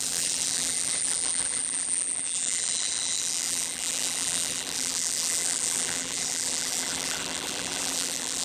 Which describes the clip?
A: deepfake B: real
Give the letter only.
A